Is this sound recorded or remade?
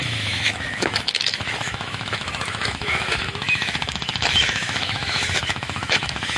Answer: remade